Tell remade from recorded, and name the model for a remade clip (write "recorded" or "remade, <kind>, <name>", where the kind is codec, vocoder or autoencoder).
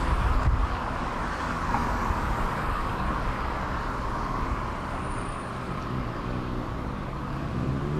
remade, codec, DAC